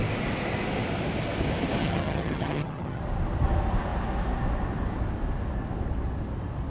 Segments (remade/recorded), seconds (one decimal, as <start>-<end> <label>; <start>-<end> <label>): 0.0-1.8 recorded; 1.8-3.0 remade; 3.0-6.7 recorded